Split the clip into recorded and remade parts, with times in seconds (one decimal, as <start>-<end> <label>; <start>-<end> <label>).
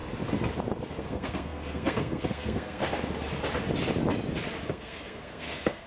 0.0-1.0 recorded; 1.0-2.8 remade; 2.8-4.7 recorded; 4.7-5.9 remade